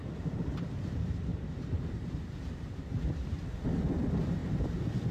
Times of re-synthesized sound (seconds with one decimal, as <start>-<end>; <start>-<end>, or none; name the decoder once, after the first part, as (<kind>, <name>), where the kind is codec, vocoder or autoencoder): 1.3-2.7 (vocoder, BigVGAN v2)